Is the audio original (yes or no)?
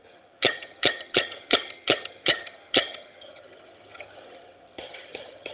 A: no